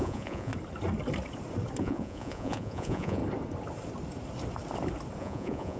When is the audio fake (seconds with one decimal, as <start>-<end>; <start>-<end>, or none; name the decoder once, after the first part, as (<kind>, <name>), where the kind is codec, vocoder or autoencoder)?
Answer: 0.0-0.5 (vocoder, Vocos); 1.8-3.2; 5.2-5.8